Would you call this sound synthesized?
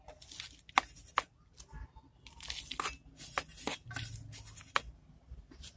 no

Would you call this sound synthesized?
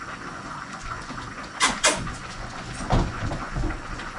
yes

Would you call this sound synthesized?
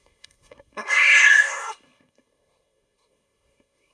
yes